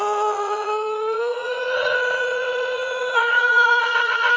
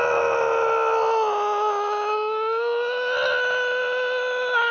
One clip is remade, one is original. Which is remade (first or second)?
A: first